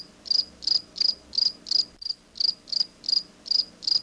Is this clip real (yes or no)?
yes